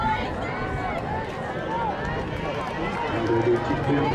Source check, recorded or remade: recorded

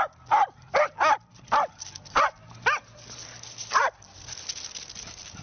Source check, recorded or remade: recorded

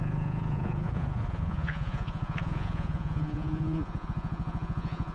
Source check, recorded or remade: remade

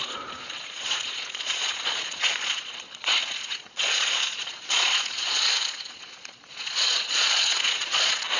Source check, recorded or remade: remade